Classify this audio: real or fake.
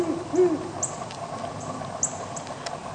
real